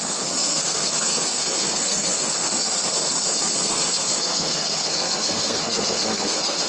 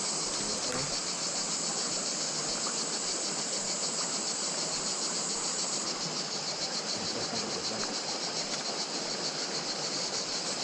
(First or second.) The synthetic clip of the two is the first